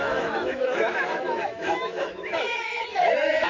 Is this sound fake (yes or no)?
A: yes